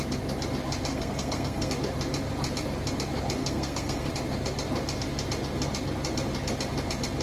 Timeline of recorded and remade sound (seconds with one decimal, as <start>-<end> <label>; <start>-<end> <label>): 0.0-0.9 recorded; 0.9-1.7 remade; 1.7-3.4 recorded; 3.4-4.1 remade; 4.1-7.2 recorded